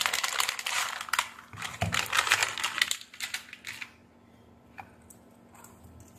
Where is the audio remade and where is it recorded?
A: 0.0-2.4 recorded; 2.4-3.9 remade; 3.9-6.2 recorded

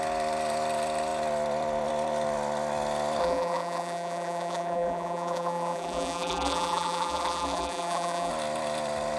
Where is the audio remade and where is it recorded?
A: 0.0-3.2 recorded; 3.2-8.3 remade; 8.3-9.2 recorded